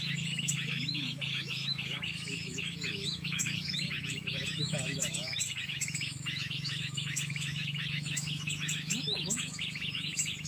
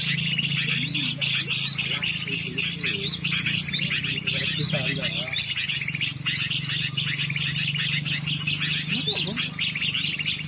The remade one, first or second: first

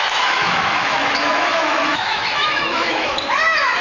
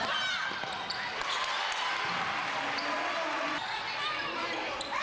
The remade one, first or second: first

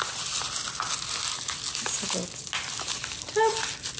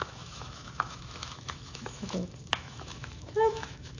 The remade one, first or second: second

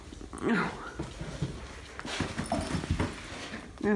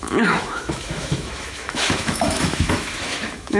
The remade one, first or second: second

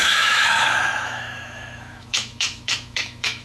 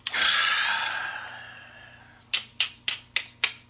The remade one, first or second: first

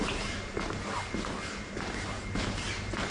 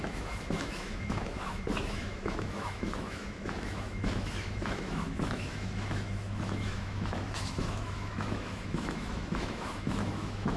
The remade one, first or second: second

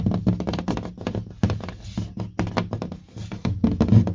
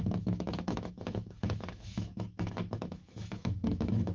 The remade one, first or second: second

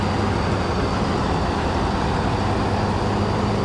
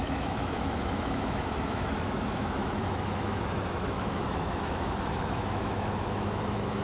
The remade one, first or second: second